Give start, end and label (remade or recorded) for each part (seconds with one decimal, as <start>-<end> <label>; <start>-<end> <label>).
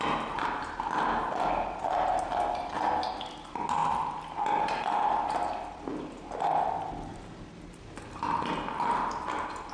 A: 0.0-9.7 recorded